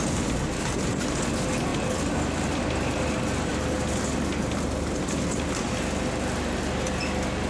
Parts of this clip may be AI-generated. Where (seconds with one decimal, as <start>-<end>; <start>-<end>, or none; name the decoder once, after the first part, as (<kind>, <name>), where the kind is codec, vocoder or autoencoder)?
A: none